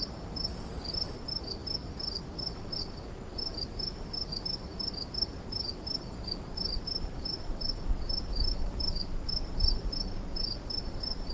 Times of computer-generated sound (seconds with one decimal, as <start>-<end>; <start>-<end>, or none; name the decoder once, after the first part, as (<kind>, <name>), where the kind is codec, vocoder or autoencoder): none